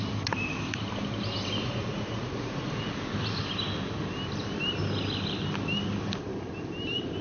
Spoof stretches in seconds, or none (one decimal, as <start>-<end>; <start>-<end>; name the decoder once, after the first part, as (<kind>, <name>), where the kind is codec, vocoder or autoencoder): 1.6-3.4 (vocoder, Vocos)